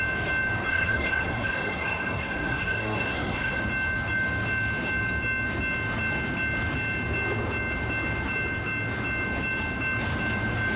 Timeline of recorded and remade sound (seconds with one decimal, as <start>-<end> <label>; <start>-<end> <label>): 0.0-0.7 recorded; 0.7-3.6 remade; 3.6-10.8 recorded